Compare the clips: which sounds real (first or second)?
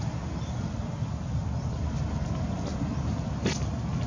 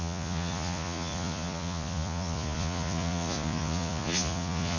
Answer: first